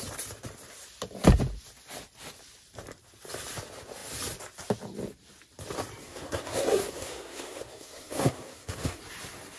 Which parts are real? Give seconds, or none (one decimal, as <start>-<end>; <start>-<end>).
0.0-6.0; 9.0-9.6